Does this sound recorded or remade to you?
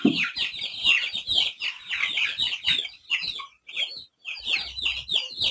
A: recorded